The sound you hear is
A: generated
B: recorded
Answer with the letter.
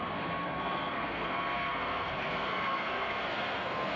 A